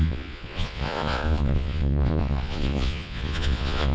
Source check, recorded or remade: remade